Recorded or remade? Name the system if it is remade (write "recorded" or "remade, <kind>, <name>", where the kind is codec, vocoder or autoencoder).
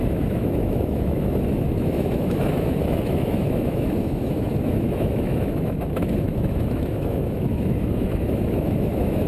remade, autoencoder, DAC-VAE